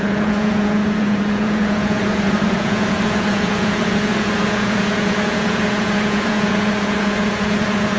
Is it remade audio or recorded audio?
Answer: remade